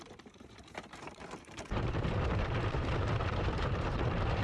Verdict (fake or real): fake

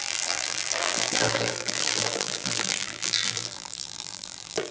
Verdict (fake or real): fake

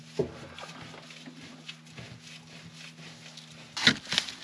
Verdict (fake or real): real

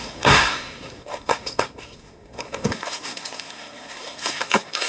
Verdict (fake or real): fake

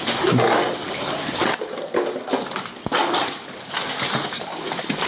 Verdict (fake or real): real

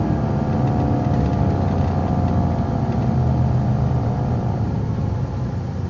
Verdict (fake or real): real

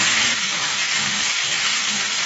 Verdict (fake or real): fake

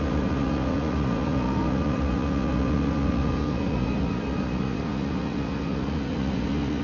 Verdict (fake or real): fake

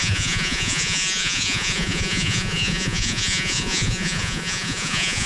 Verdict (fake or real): fake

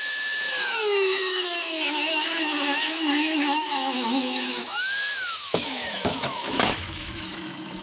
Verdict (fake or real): fake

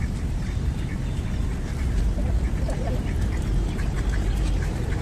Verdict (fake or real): fake